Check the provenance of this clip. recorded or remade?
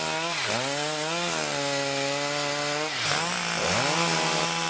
recorded